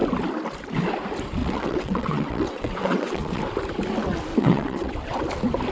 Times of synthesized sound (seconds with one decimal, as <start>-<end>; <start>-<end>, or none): 1.4-3.4; 4.3-5.2